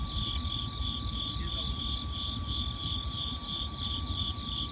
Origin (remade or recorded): recorded